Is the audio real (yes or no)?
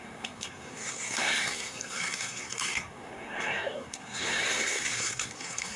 no